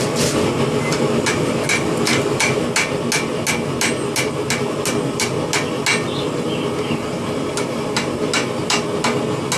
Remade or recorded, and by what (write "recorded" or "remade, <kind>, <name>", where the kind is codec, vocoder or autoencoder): recorded